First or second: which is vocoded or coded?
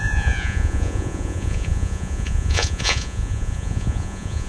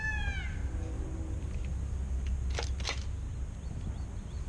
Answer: first